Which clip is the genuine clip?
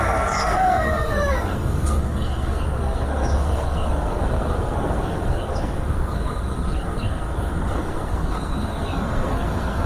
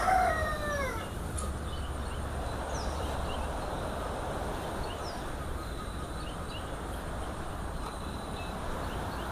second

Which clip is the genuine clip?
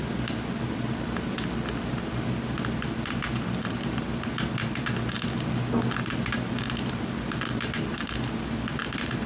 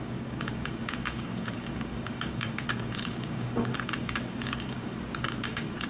first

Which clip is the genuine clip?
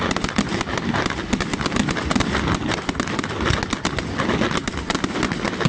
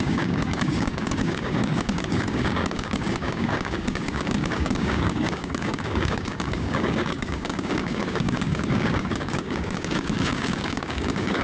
first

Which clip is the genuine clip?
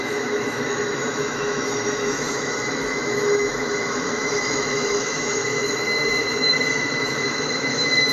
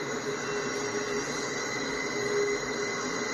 second